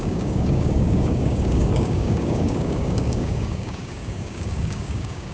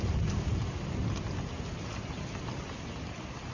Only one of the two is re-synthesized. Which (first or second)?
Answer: first